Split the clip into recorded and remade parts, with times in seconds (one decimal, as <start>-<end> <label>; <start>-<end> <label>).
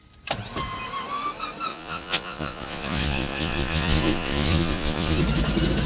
0.0-1.7 recorded; 1.7-5.2 remade; 5.2-5.9 recorded